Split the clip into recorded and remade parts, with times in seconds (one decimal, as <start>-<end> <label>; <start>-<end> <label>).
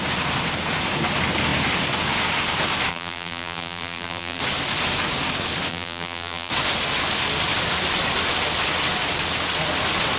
0.0-2.9 recorded; 2.9-4.4 remade; 4.4-5.7 recorded; 5.7-6.5 remade; 6.5-10.2 recorded